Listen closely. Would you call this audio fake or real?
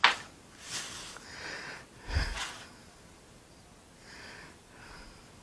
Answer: real